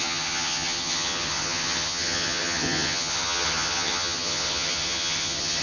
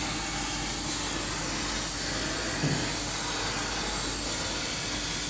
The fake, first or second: first